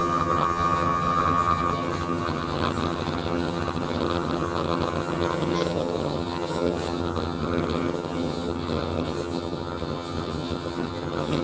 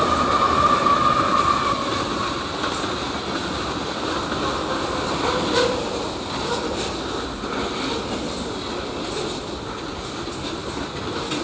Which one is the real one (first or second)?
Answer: second